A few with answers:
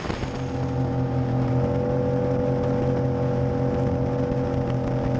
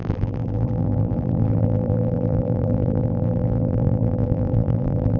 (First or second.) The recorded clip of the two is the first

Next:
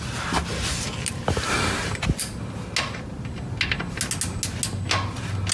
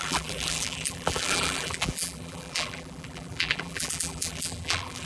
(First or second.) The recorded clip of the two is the first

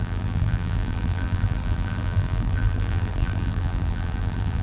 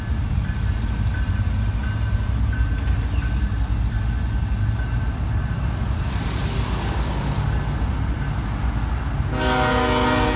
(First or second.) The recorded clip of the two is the second